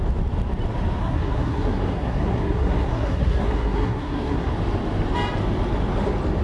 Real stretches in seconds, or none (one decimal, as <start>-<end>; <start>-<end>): 0.0-1.0; 4.5-6.4